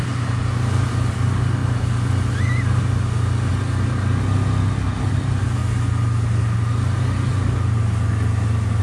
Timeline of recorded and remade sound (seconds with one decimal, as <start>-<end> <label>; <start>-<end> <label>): 0.0-8.8 recorded